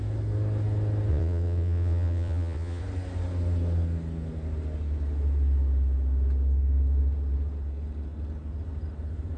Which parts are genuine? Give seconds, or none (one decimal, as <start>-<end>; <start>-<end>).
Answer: 0.0-1.1; 2.8-9.4